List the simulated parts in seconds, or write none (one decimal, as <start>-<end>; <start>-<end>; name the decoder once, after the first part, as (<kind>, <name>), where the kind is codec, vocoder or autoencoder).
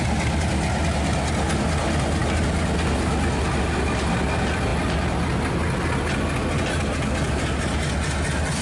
none